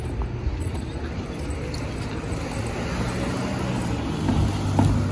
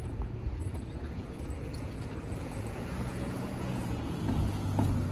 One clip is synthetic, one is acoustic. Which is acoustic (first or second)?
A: first